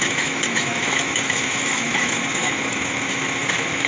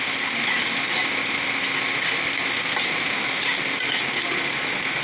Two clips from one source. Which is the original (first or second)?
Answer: second